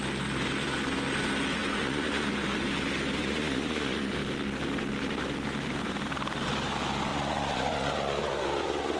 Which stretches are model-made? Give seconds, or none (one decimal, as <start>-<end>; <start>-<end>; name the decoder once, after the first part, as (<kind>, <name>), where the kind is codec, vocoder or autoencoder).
1.6-2.3 (vocoder, Vocos); 3.2-4.1; 7.1-9.0